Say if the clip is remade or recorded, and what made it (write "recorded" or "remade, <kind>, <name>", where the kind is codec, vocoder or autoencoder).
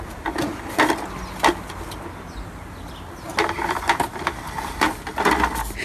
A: recorded